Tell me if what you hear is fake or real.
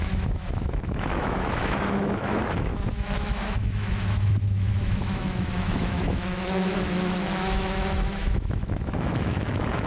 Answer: fake